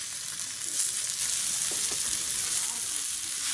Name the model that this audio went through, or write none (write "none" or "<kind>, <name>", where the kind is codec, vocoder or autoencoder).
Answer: none